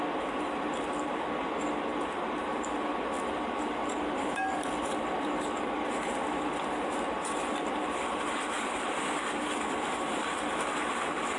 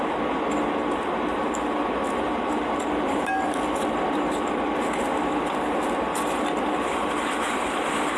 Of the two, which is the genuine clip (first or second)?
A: second